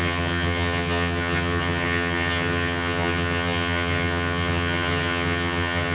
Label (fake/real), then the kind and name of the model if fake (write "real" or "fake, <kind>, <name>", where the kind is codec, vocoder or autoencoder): fake, vocoder, HiFi-GAN